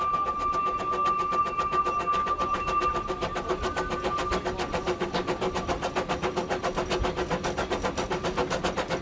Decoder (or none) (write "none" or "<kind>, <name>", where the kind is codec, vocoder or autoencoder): none